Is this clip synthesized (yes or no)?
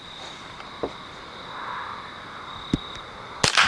no